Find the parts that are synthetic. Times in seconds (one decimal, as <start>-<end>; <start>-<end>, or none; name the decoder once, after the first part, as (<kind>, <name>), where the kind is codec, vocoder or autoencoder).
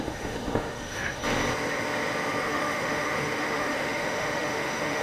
0.0-1.2 (autoencoder, DAC-VAE); 2.4-5.0